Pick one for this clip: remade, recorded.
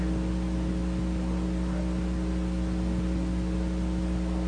recorded